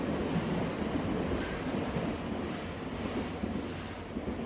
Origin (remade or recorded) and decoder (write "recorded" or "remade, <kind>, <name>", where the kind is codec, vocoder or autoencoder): recorded